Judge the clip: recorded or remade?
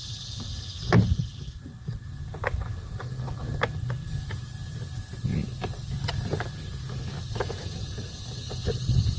recorded